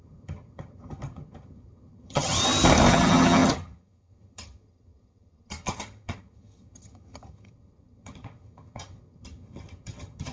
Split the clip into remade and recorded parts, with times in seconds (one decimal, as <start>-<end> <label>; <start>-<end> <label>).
0.0-2.4 remade; 2.4-2.9 recorded; 2.9-10.3 remade